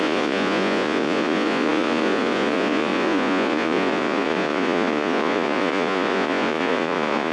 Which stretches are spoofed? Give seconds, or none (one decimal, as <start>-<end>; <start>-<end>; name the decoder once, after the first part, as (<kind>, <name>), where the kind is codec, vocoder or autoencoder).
0.0-7.3 (vocoder, Vocos)